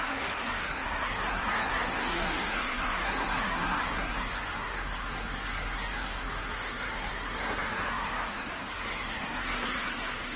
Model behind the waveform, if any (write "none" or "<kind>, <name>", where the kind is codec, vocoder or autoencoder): codec, SNAC